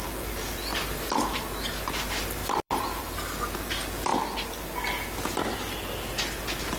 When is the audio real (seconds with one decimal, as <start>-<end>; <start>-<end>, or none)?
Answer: 0.0-0.7; 1.3-2.4; 3.0-6.8

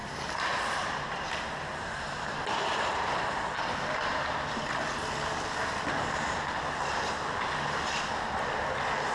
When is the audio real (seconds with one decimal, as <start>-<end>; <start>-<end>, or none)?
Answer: 3.8-9.1

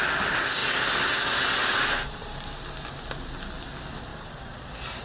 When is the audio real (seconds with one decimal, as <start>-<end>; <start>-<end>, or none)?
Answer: 0.0-4.1

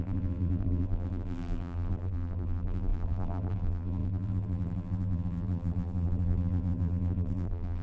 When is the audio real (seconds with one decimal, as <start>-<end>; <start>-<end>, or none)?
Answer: none

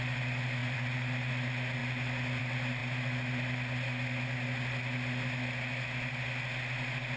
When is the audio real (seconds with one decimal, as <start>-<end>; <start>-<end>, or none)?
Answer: 0.0-0.6; 1.3-7.2

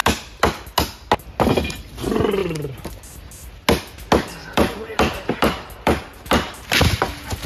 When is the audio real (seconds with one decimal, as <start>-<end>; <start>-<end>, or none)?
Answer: 0.0-4.4; 6.8-7.5

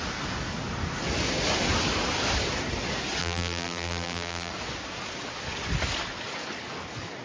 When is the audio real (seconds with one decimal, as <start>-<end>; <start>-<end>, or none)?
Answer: 0.0-3.2; 4.5-7.2